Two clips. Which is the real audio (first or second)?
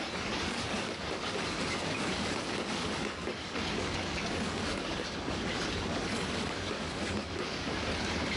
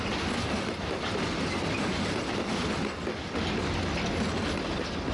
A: second